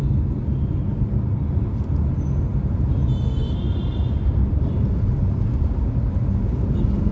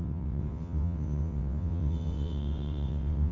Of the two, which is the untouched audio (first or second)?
first